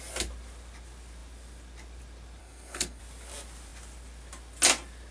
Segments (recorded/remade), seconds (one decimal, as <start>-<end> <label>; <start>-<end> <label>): 0.0-2.4 recorded; 2.4-3.0 remade; 3.0-5.1 recorded